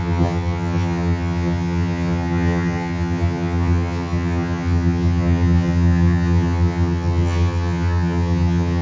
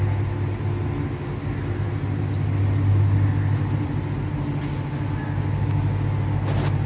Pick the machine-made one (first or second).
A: first